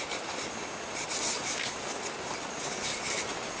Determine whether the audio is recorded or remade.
recorded